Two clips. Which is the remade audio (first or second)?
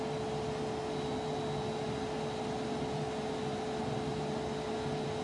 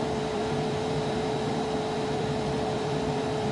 second